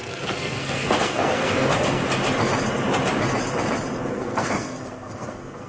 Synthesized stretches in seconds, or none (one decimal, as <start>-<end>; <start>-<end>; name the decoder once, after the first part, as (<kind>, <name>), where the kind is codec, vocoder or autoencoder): 0.0-2.0 (codec, SNAC); 4.1-5.7